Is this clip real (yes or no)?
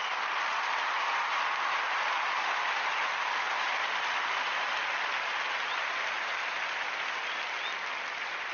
yes